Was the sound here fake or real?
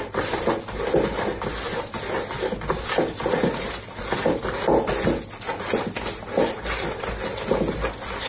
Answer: real